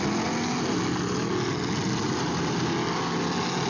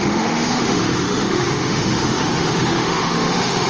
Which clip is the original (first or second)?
first